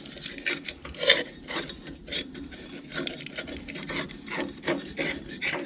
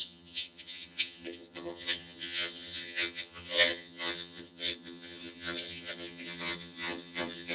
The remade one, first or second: second